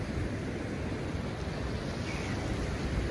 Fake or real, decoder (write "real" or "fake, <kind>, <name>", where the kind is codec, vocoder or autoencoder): real